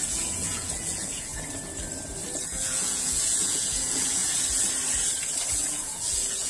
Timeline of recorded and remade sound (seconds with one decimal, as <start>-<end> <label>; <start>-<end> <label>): 0.0-1.3 remade; 1.3-2.4 recorded; 2.4-4.2 remade; 4.2-5.5 recorded; 5.5-6.5 remade